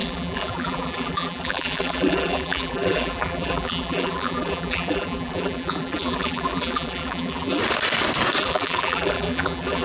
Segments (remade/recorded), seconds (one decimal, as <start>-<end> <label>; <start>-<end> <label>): 0.0-7.6 remade; 7.6-8.4 recorded; 8.4-9.8 remade